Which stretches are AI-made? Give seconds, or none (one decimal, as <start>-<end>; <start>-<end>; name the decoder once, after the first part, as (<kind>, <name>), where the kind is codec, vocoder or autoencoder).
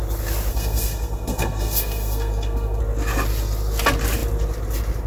0.5-2.8 (codec, SNAC)